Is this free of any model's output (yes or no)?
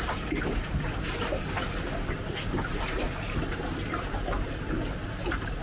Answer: yes